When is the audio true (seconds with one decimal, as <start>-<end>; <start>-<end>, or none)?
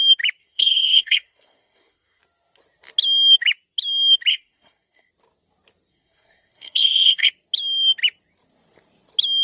0.0-0.4; 2.2-4.3; 5.1-5.9; 7.3-9.4